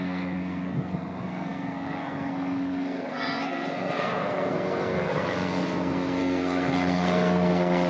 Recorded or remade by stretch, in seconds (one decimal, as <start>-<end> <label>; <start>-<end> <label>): 0.0-7.9 remade